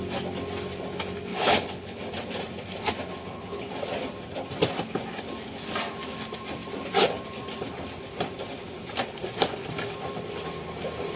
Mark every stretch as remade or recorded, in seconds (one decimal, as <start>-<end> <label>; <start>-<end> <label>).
0.0-1.3 recorded; 1.3-2.0 remade; 2.0-3.2 recorded; 3.2-3.7 remade; 3.7-11.2 recorded